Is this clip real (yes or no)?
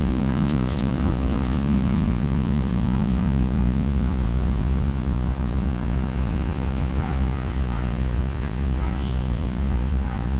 no